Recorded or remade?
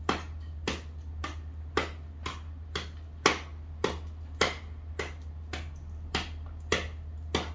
recorded